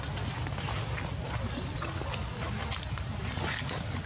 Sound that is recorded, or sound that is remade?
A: recorded